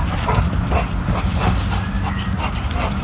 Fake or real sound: real